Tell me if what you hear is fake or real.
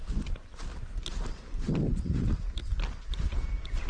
real